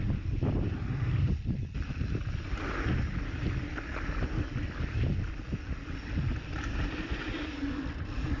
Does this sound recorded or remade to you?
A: recorded